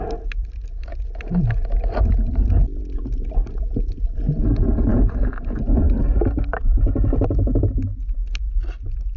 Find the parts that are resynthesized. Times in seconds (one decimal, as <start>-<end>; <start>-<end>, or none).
none